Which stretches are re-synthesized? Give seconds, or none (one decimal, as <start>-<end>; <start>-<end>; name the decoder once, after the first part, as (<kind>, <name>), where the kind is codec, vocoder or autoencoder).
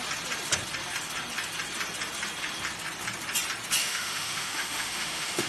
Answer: 3.8-5.5 (autoencoder, DAC-VAE)